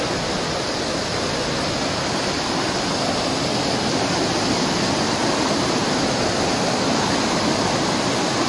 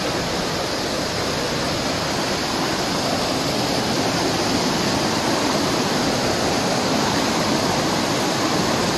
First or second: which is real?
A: first